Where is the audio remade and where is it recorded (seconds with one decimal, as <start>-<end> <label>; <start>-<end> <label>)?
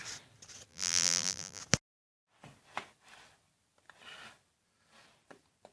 0.0-0.7 recorded; 0.7-1.6 remade; 1.6-5.7 recorded